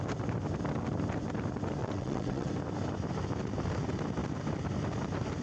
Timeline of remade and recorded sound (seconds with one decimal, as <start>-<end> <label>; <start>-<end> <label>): 0.0-1.8 recorded; 1.8-2.5 remade; 2.5-5.4 recorded